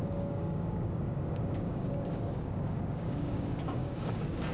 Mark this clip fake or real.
fake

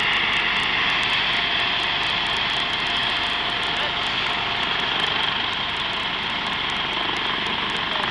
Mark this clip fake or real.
real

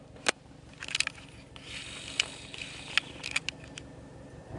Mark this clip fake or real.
real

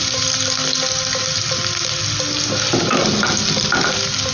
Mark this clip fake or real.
real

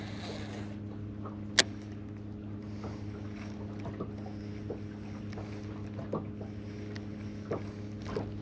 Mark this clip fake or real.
real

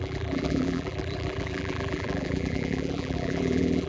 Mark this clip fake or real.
fake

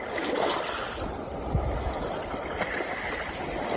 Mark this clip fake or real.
real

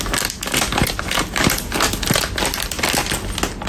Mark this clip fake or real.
real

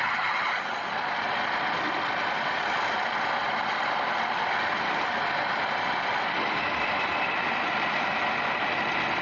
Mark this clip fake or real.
real